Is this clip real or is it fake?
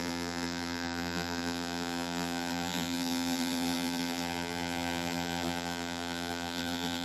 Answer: fake